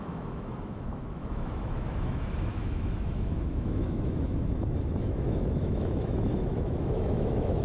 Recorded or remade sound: remade